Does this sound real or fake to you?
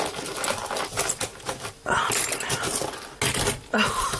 real